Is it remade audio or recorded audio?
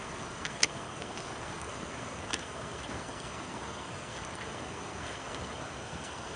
remade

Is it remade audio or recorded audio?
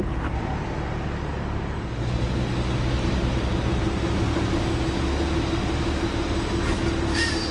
recorded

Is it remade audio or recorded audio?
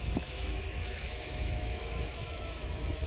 remade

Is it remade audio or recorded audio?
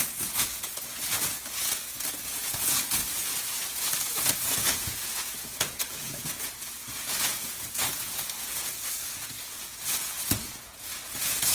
remade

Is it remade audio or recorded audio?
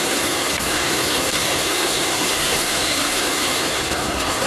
remade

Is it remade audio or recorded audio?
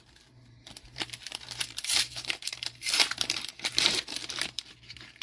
remade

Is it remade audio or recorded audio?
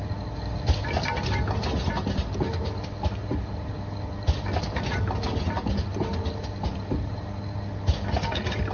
recorded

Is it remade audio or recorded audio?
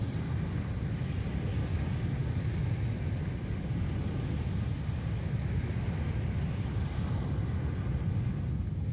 recorded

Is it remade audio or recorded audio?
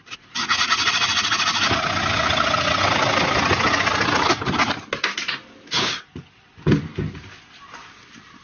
recorded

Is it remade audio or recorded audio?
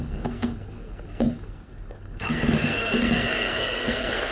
remade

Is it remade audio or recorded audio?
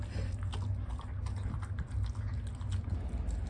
recorded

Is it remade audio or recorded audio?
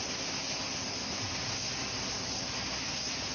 recorded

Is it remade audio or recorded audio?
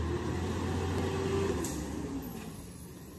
recorded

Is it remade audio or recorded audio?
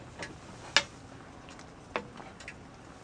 recorded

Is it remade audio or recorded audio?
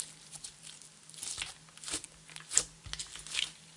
recorded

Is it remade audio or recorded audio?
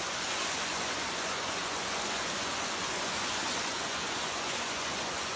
remade